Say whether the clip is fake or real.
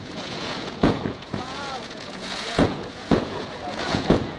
fake